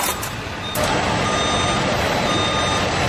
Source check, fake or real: real